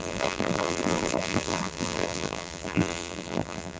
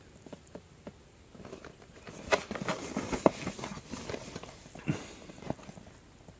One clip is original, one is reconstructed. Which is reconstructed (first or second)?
first